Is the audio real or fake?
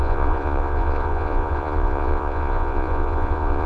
fake